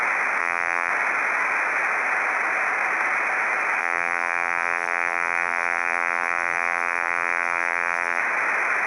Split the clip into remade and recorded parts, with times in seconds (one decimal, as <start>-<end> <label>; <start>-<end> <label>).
0.0-0.4 recorded; 0.4-0.9 remade; 0.9-3.8 recorded; 3.8-8.2 remade; 8.2-8.9 recorded